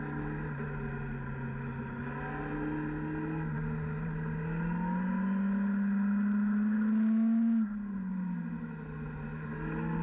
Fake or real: real